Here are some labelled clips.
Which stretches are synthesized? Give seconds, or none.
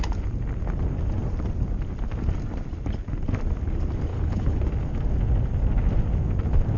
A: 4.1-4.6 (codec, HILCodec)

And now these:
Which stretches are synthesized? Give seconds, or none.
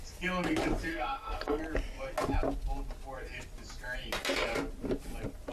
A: 0.9-1.6 (codec, SNAC)